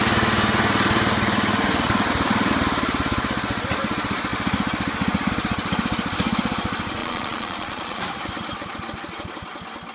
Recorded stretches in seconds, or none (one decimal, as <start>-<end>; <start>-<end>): 0.0-7.0; 8.0-9.9

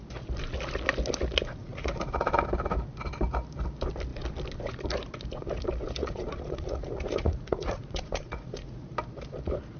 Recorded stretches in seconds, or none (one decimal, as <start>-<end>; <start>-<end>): 0.0-1.6; 2.2-6.0; 8.9-9.8